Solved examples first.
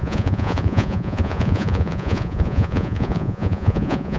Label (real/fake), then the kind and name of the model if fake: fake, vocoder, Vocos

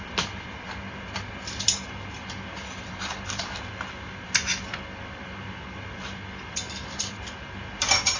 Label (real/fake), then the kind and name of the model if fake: fake, vocoder, BigVGAN v2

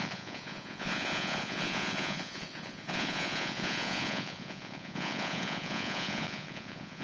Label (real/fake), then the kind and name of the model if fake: fake, vocoder, Vocos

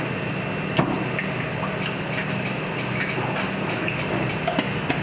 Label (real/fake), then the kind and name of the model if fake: real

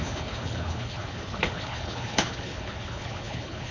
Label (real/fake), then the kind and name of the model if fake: fake, codec, HILCodec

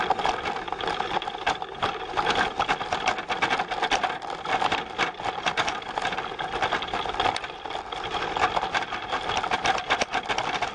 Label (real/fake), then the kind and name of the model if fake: fake, vocoder, BigVGAN v2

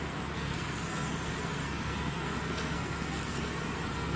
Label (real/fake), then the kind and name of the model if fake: fake, codec, SNAC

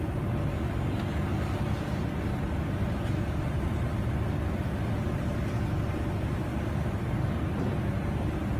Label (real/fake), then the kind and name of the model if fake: real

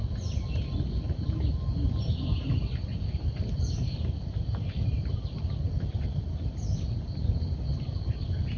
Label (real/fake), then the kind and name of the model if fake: real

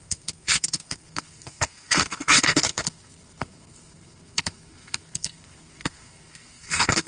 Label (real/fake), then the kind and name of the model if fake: fake, codec, SNAC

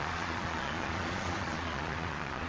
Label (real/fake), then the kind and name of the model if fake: fake, vocoder, Vocos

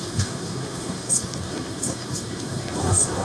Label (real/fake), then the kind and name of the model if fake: fake, codec, SNAC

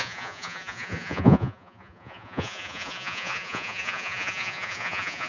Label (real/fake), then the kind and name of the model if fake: fake, vocoder, Vocos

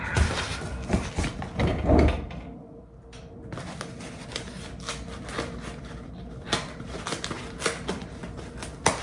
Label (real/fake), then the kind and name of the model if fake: real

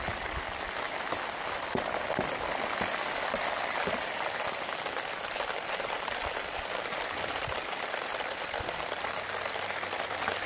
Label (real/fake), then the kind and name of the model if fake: real